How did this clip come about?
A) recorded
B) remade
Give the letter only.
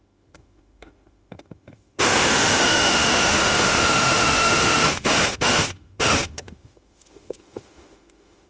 B